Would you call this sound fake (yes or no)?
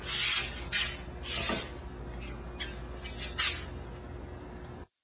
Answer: no